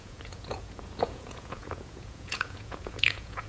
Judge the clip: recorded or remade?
remade